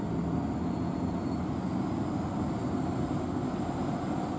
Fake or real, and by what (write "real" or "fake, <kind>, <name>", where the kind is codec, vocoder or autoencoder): real